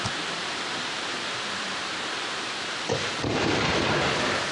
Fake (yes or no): yes